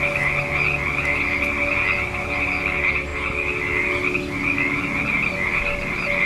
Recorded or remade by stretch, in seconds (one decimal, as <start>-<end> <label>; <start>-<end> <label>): 0.0-6.3 recorded